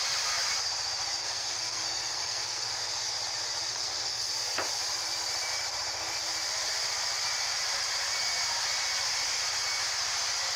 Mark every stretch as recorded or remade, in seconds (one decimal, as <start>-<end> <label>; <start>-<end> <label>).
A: 0.0-1.2 recorded; 1.2-2.8 remade; 2.8-3.7 recorded; 3.7-4.3 remade; 4.3-10.6 recorded